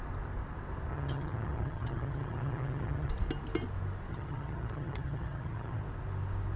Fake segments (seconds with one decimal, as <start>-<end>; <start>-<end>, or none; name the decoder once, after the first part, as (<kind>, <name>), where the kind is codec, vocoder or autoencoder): 0.9-3.1 (vocoder, HiFi-GAN); 4.1-5.8